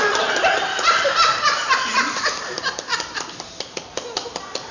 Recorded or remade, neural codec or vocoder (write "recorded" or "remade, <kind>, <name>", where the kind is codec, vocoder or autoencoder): remade, vocoder, BigVGAN v2